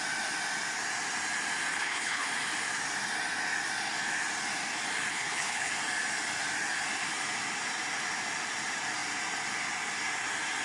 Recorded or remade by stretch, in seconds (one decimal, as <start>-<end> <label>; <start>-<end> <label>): 0.0-1.7 recorded; 1.7-2.3 remade; 2.3-5.1 recorded; 5.1-5.7 remade; 5.7-10.6 recorded